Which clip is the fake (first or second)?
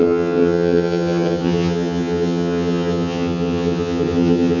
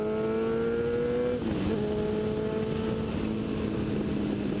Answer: first